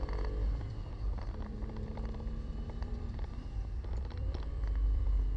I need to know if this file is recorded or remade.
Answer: remade